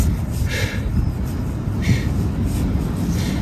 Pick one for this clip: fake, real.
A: real